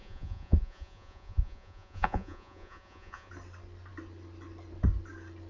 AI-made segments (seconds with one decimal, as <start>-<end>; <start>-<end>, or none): 0.0-3.3